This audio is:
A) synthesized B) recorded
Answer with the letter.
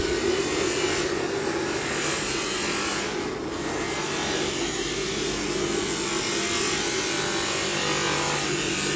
B